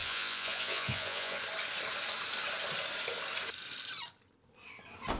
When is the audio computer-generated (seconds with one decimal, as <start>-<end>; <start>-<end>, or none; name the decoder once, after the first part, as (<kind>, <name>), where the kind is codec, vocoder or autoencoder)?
0.0-1.4 (vocoder, Vocos)